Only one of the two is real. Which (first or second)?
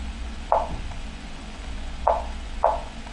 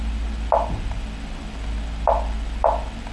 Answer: second